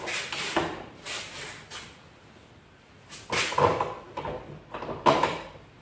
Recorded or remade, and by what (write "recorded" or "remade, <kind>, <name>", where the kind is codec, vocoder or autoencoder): recorded